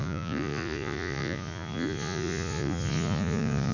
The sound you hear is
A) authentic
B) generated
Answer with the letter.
B